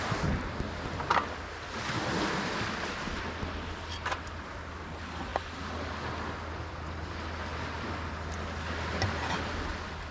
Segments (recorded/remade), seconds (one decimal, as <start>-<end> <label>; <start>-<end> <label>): 0.0-10.1 recorded